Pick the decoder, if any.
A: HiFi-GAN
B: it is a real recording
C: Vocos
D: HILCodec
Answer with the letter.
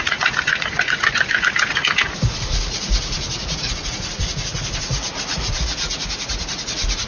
C